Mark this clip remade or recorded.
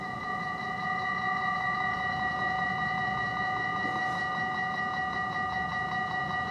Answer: recorded